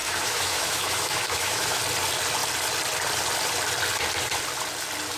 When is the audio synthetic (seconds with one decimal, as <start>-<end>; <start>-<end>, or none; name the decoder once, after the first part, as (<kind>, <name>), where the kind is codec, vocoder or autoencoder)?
0.0-1.8 (autoencoder, DAC-VAE)